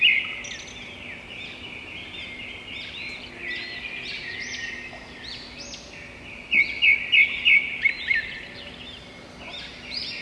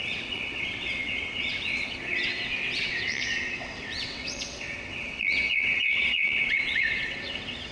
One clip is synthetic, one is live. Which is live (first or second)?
first